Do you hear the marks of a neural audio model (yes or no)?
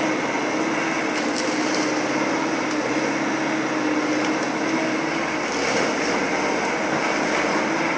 no